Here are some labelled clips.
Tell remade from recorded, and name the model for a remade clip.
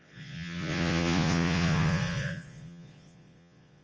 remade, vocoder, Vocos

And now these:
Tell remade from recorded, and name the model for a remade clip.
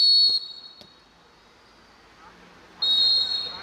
recorded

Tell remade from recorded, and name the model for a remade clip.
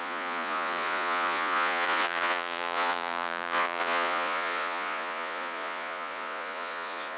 remade, vocoder, Vocos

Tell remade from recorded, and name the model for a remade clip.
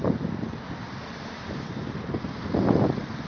recorded